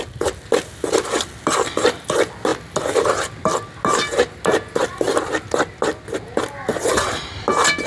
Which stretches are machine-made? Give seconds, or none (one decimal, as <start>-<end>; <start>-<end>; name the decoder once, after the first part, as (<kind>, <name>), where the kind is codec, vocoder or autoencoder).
none